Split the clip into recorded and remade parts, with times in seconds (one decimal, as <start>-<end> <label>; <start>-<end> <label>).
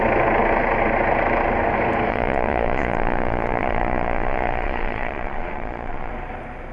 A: 0.0-2.1 recorded; 2.1-6.1 remade; 6.1-6.7 recorded